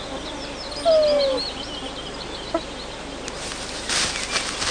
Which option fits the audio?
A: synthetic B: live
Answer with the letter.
B